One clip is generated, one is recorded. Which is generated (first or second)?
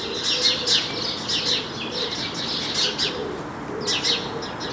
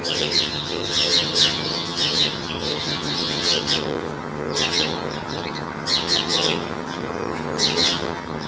second